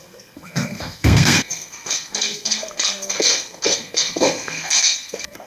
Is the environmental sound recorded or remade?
remade